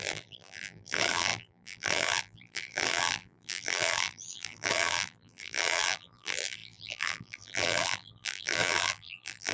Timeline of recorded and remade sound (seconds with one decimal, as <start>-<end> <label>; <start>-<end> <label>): 0.0-9.5 remade